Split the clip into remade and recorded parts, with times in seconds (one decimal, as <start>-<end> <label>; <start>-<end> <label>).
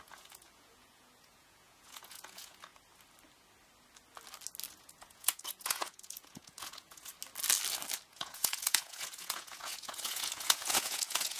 0.0-2.7 remade; 2.7-4.7 recorded; 4.7-7.1 remade; 7.1-8.1 recorded; 8.1-11.4 remade